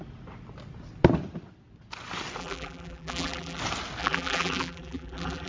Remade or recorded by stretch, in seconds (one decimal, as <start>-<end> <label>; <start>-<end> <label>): 0.0-2.4 recorded; 2.4-3.6 remade; 3.6-4.0 recorded; 4.0-5.5 remade